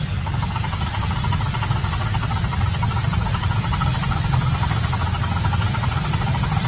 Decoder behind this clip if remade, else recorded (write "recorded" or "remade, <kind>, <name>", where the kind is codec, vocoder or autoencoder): recorded